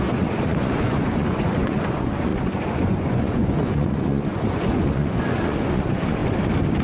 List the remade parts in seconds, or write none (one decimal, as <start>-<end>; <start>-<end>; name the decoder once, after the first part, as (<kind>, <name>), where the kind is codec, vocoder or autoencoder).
0.0-6.2 (vocoder, Vocos)